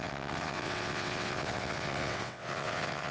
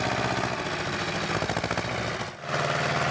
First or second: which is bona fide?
second